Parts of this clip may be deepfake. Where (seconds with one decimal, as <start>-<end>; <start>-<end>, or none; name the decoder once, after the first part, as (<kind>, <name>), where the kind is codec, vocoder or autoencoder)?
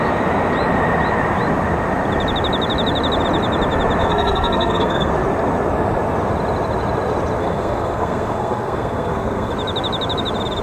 4.0-5.1 (codec, SNAC); 7.4-9.5